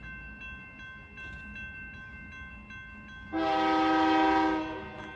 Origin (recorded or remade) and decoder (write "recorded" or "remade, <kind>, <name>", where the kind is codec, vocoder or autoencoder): recorded